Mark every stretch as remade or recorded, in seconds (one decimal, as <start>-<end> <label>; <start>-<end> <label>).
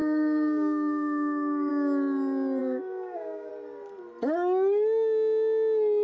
0.0-1.7 remade; 1.7-2.6 recorded; 2.6-3.5 remade; 3.5-6.0 recorded